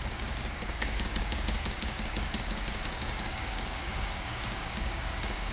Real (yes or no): no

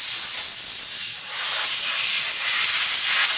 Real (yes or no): yes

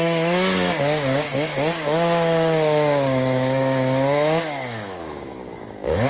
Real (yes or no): no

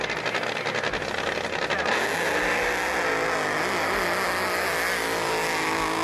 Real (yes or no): yes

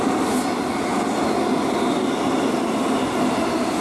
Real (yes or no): yes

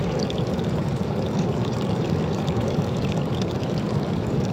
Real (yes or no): no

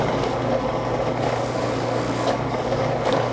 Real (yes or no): no